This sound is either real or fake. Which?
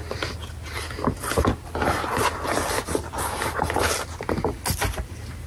real